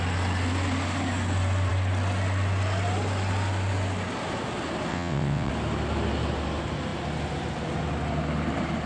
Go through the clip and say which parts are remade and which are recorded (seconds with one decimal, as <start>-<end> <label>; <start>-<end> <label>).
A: 0.0-4.9 recorded; 4.9-5.5 remade; 5.5-8.9 recorded